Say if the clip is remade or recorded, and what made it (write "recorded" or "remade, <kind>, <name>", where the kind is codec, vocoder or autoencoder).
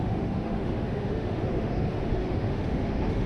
remade, autoencoder, DAC-VAE